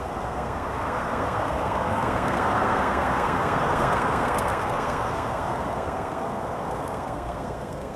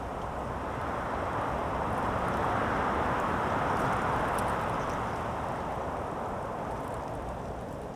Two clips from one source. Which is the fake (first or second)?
first